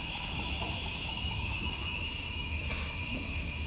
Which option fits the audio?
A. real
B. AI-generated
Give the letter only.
B